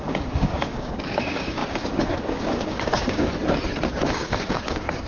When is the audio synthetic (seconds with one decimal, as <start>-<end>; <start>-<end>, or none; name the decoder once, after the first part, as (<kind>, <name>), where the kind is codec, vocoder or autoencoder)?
0.0-3.3 (codec, DAC); 4.1-5.1